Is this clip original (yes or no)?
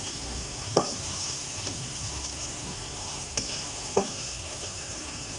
no